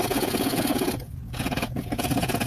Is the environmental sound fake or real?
fake